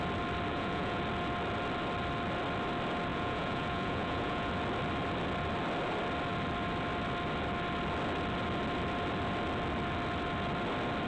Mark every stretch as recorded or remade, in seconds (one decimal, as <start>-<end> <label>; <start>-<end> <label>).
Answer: 0.0-0.5 recorded; 0.5-1.0 remade; 1.0-3.1 recorded; 3.1-4.5 remade; 4.5-11.1 recorded